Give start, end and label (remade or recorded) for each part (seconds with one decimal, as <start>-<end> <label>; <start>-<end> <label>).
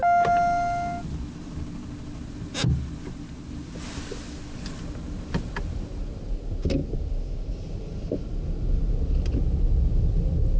0.0-10.6 recorded